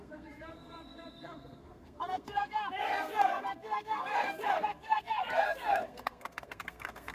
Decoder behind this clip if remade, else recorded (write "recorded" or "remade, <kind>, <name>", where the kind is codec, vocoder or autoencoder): remade, codec, SNAC